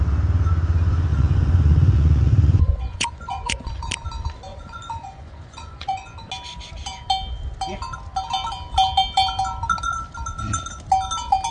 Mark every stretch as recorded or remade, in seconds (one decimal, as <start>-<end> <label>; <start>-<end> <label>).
0.0-1.1 recorded; 1.1-3.8 remade; 3.8-4.5 recorded; 4.5-6.3 remade; 6.3-11.5 recorded